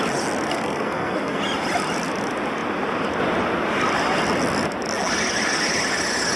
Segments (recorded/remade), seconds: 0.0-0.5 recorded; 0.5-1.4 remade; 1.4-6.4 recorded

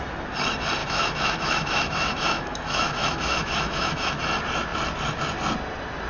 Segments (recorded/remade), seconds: 0.0-0.8 recorded; 0.8-4.1 remade; 4.1-6.1 recorded

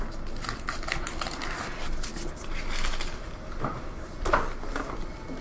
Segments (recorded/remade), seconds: 0.0-5.4 recorded

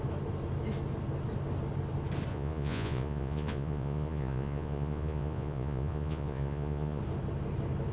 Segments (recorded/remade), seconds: 0.0-2.3 recorded; 2.3-7.0 remade; 7.0-7.9 recorded

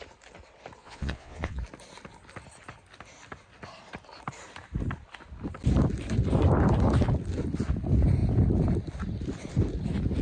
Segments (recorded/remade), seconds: 0.0-0.8 recorded; 0.8-1.6 remade; 1.6-10.2 recorded

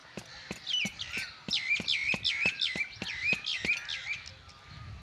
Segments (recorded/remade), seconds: 0.0-5.0 recorded

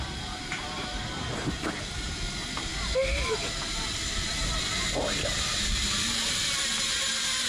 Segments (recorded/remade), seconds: 0.0-7.5 recorded